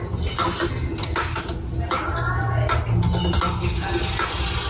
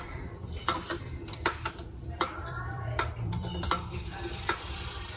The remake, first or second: second